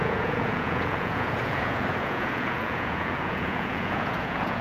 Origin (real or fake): fake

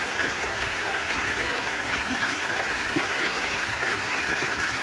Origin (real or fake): fake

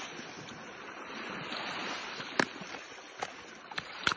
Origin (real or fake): real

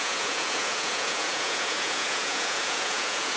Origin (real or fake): fake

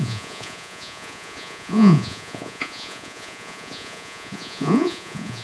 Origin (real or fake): fake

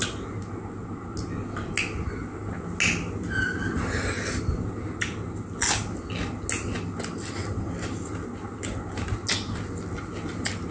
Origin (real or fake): real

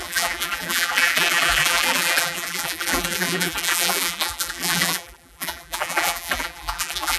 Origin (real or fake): fake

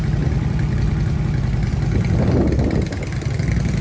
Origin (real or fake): real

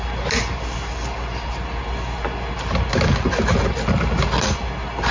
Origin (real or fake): real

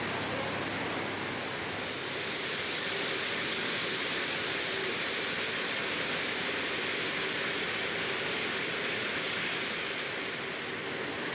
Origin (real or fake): real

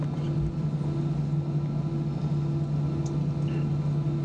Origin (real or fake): real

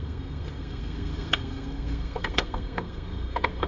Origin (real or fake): fake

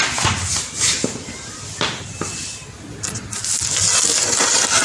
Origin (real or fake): real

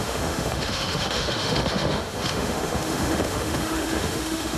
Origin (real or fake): fake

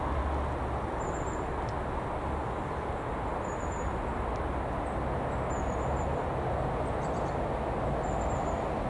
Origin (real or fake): real